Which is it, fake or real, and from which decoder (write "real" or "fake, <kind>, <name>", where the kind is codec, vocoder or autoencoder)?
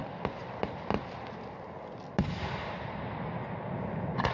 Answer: real